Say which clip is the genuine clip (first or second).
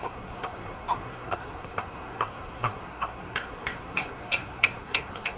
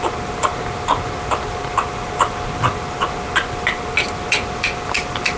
second